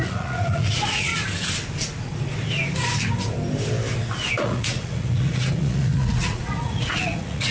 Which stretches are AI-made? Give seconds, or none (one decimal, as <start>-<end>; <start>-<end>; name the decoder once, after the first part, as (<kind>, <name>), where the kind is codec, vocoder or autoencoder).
0.0-1.1 (vocoder, Vocos); 4.4-7.5